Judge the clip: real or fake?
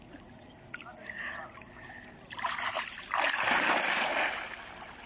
fake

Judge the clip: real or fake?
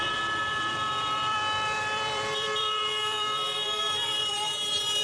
fake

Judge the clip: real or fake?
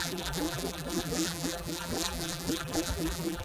fake